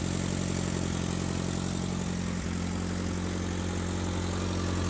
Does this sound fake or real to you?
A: real